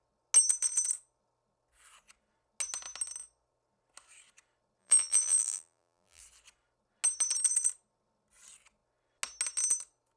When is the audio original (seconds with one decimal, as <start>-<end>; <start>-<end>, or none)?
0.0-4.8; 6.2-10.2